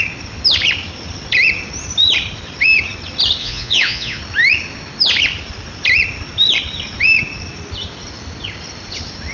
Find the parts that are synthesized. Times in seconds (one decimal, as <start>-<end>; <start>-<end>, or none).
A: 3.4-4.2